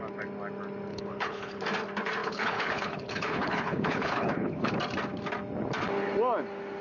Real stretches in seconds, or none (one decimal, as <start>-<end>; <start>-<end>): 0.0-0.9; 1.6-2.2; 4.7-6.8